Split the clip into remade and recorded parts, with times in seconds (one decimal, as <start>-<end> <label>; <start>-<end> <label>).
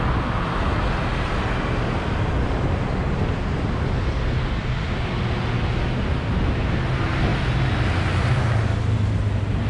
0.0-9.7 recorded